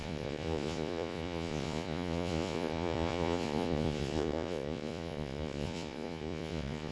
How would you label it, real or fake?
fake